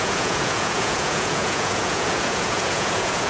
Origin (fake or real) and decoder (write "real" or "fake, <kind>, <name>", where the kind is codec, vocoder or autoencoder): fake, vocoder, Vocos